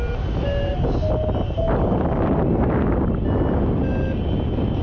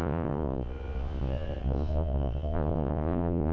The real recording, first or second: first